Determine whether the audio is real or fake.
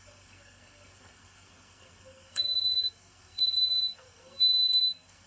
fake